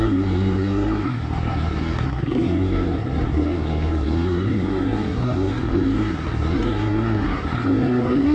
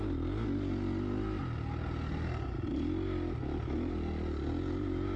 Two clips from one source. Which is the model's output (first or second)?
first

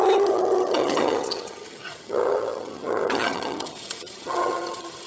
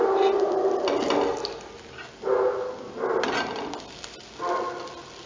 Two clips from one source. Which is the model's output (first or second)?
first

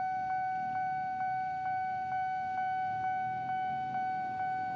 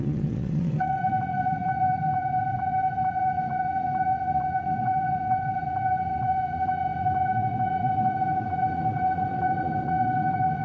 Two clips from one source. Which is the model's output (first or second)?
second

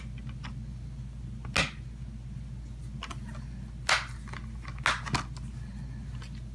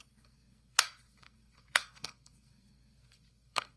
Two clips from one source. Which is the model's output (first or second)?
second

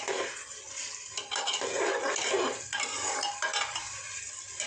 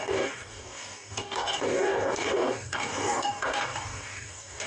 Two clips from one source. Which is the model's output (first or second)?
second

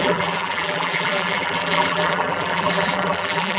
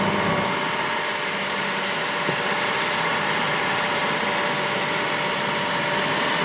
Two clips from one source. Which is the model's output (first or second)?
first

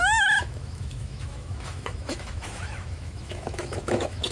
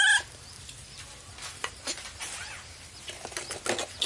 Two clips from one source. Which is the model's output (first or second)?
first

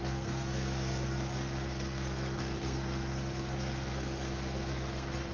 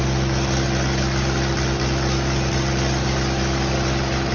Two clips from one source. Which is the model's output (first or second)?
first